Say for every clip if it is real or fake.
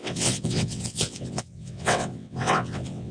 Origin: fake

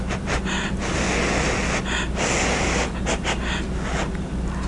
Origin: real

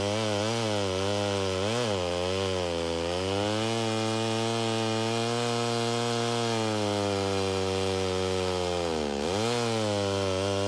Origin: real